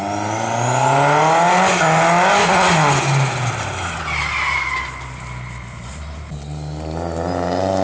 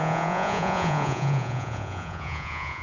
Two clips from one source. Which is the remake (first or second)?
second